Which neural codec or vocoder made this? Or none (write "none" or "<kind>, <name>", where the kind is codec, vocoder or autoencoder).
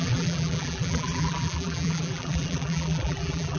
vocoder, BigVGAN v2